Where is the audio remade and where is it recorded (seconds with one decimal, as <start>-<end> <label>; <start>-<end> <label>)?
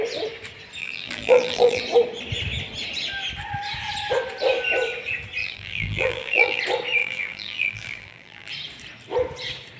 0.0-0.8 recorded; 0.8-1.8 remade; 1.8-5.4 recorded; 5.4-6.6 remade; 6.6-7.0 recorded; 7.0-8.5 remade; 8.5-9.8 recorded